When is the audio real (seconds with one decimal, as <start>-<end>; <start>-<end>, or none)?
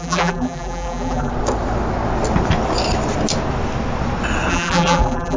1.3-4.5